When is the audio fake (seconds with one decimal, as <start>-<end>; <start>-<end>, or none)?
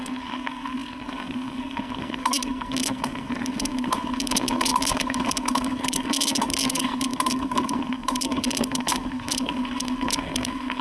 0.0-10.8